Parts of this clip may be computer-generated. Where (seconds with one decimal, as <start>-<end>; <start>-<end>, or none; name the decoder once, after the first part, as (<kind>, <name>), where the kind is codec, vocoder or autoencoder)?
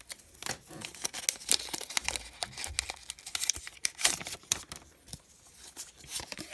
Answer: 3.8-5.1 (vocoder, BigVGAN v2)